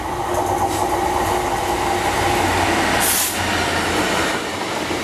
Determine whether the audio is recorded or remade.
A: recorded